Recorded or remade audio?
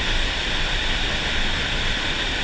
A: recorded